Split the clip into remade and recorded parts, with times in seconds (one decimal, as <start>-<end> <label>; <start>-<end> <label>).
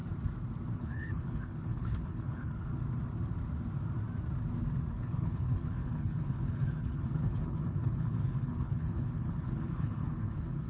0.0-0.8 recorded; 0.8-2.7 remade; 2.7-4.9 recorded; 4.9-10.7 remade